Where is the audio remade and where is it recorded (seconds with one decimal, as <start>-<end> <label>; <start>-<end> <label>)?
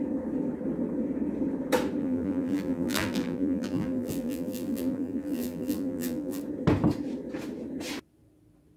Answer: 0.0-2.0 recorded; 2.0-6.4 remade; 6.4-8.8 recorded